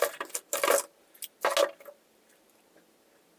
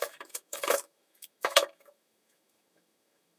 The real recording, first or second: first